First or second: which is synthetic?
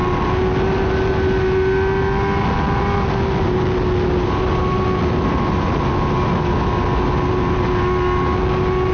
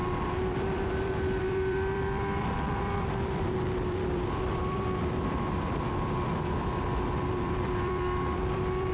second